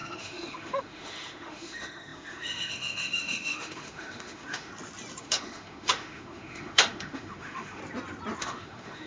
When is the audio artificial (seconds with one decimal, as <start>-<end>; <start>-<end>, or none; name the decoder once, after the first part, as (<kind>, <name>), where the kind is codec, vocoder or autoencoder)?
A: 0.0-4.7 (autoencoder, DAC-VAE); 5.2-7.8; 8.4-9.1